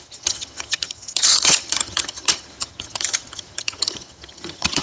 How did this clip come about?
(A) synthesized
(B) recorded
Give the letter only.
A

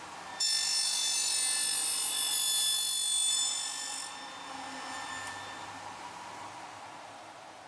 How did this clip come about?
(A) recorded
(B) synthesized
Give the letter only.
A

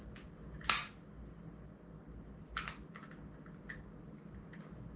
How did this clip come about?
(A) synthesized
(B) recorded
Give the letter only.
B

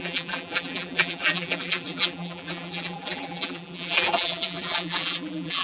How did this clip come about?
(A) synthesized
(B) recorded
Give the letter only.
A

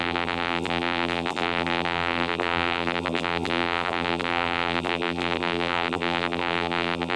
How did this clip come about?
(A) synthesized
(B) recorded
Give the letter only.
A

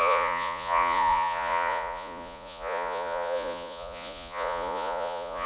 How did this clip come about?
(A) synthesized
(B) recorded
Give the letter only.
A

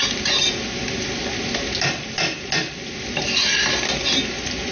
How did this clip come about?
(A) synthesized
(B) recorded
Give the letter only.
B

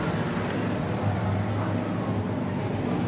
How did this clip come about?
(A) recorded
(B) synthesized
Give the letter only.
A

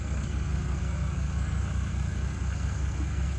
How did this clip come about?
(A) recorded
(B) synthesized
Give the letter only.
B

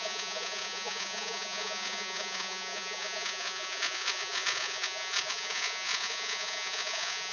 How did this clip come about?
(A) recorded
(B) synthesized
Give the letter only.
B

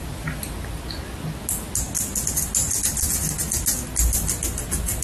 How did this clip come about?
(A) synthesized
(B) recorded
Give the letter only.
B